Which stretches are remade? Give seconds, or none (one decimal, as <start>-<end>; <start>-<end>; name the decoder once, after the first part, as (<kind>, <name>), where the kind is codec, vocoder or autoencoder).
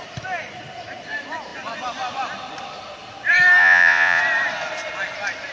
3.6-4.2 (vocoder, Vocos)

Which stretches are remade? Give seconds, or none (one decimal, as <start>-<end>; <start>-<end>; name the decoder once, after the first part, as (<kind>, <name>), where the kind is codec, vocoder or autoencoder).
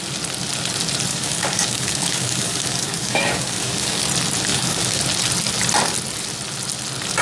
1.1-4.0 (codec, DAC); 4.5-5.0